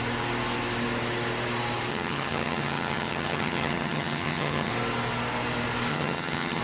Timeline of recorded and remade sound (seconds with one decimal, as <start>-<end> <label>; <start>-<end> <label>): 0.0-1.9 recorded; 1.9-4.7 remade; 4.7-5.9 recorded; 5.9-6.6 remade